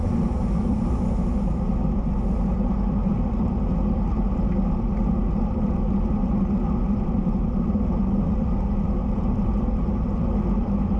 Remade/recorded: recorded